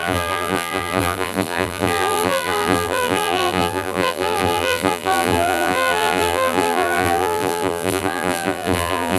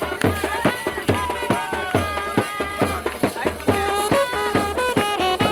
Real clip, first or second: second